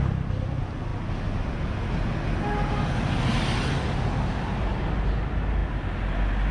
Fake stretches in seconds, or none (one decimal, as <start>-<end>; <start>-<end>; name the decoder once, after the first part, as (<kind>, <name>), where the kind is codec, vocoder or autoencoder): none